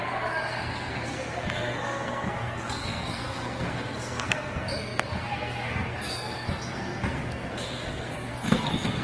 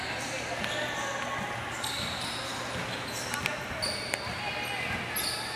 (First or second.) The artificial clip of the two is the first